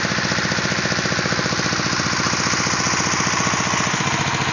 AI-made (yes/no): no